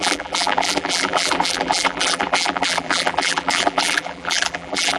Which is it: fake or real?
fake